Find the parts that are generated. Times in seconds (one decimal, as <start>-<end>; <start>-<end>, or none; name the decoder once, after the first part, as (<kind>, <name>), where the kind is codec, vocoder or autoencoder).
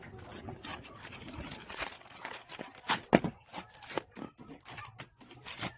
0.7-2.4 (vocoder, Vocos)